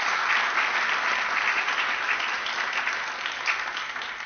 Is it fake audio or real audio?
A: real